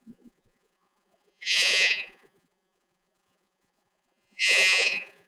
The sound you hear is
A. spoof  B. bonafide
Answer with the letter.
A